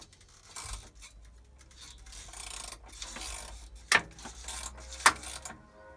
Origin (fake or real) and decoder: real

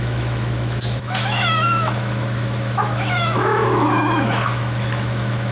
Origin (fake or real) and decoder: fake, autoencoder, DAC-VAE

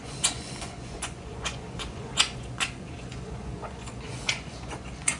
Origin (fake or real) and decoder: fake, vocoder, Vocos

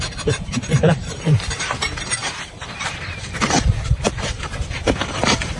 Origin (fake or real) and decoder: fake, vocoder, BigVGAN v2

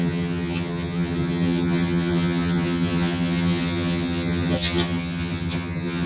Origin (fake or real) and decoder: fake, vocoder, HiFi-GAN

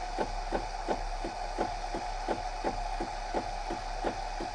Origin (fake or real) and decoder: real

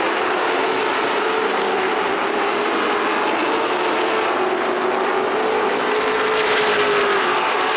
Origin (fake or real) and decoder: real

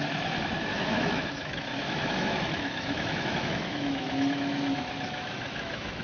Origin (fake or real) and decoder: fake, autoencoder, DAC-VAE